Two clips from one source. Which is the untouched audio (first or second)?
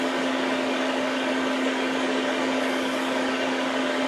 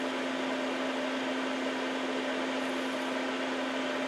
second